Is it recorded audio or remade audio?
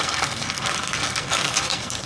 remade